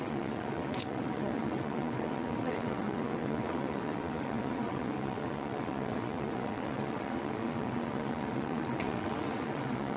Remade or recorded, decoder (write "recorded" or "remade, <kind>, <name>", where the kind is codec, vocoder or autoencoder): remade, vocoder, WaveNeXt